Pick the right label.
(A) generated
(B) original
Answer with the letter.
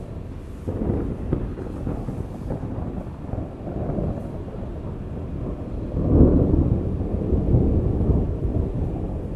B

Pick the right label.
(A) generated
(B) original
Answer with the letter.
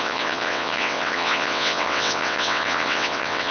A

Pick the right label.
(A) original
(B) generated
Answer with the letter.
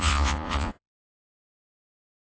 B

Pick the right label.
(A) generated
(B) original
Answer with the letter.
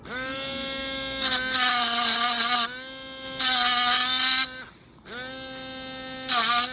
B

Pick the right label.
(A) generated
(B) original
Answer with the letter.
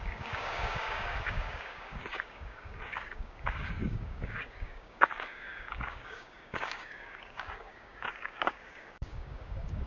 A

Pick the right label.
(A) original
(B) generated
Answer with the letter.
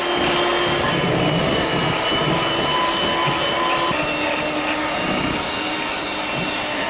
A